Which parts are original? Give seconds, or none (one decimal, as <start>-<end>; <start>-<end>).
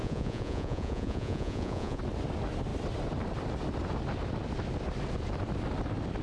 2.0-6.2